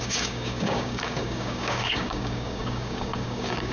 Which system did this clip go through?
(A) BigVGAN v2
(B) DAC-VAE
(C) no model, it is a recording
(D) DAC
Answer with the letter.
D